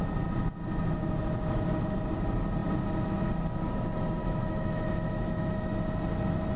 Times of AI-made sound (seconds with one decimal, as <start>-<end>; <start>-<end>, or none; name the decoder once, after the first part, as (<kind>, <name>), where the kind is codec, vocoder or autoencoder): 4.2-5.8 (autoencoder, DAC-VAE)